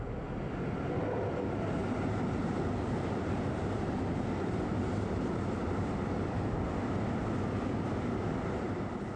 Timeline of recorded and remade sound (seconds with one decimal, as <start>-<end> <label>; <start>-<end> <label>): 0.0-1.8 recorded; 1.8-2.6 remade; 2.6-9.2 recorded